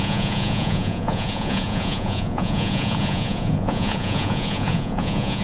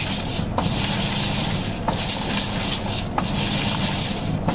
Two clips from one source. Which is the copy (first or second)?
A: first